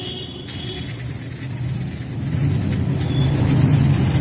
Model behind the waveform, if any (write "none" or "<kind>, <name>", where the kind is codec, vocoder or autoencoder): none